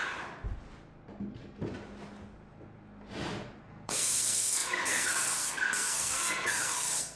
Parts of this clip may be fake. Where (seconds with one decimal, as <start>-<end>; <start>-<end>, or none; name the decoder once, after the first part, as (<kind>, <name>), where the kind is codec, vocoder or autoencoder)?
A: 3.6-7.2 (codec, SNAC)